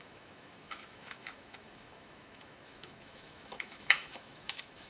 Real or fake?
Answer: fake